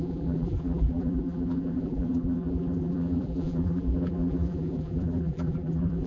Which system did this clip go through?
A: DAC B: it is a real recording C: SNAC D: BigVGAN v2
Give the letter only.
D